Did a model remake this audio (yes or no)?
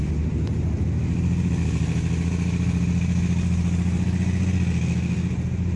no